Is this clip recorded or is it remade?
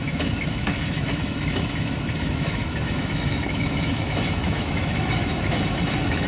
remade